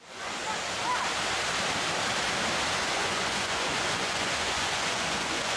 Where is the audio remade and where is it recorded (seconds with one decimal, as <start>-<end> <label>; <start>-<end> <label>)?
0.0-0.4 remade; 0.4-2.8 recorded; 2.8-5.6 remade